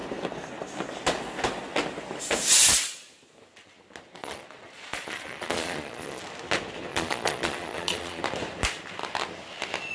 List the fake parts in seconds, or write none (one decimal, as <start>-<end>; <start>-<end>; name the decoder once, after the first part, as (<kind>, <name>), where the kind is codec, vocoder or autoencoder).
4.2-6.2 (vocoder, Vocos); 6.9-8.2